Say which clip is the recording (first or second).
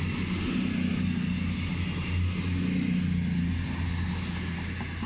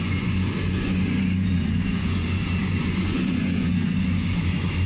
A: first